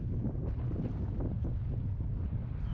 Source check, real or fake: real